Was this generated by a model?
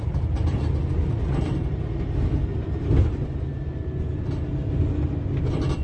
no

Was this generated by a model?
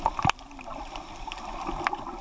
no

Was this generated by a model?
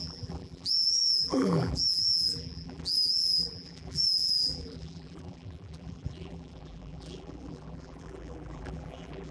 yes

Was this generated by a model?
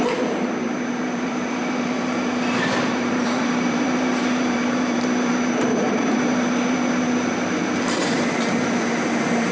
yes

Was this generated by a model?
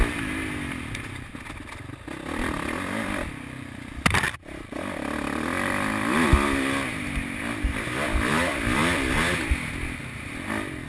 no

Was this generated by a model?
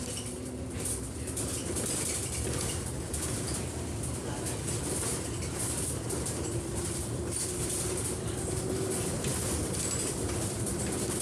yes